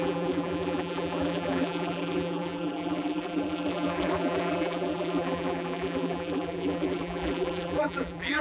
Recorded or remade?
remade